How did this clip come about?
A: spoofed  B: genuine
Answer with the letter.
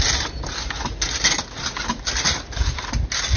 B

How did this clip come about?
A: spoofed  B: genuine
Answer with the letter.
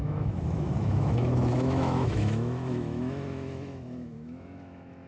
A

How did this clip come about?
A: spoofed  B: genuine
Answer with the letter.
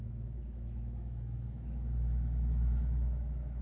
A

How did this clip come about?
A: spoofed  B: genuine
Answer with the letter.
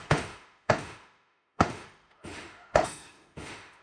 A